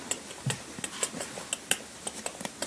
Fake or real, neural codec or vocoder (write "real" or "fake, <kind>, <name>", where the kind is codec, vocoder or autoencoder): real